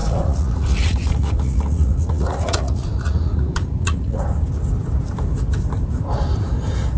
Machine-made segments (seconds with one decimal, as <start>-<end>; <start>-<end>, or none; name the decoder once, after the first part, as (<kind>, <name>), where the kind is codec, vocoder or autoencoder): 0.0-4.2 (vocoder, Vocos)

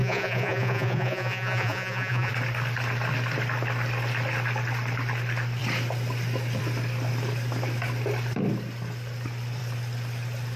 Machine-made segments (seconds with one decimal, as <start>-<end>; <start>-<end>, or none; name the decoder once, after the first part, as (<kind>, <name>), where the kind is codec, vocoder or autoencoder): 0.0-2.3 (vocoder, Vocos)

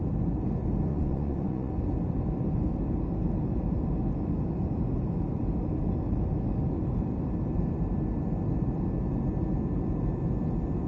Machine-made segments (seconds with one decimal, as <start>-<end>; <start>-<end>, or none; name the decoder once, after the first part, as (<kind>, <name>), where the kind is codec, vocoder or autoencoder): 0.9-1.7 (vocoder, Vocos)